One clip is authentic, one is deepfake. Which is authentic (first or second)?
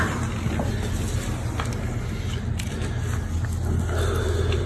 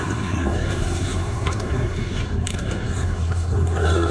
first